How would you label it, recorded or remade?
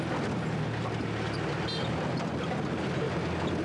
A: recorded